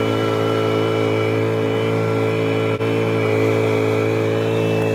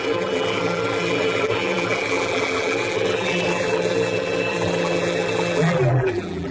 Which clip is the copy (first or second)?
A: second